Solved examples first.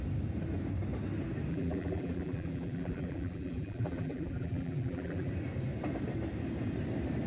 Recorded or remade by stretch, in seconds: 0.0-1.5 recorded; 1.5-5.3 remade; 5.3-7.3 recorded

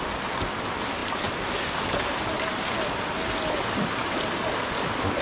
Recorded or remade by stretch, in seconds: 0.0-5.2 recorded

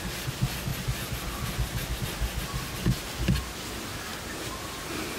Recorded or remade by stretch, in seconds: 0.0-0.7 recorded; 0.7-2.0 remade; 2.0-4.1 recorded; 4.1-4.8 remade; 4.8-5.2 recorded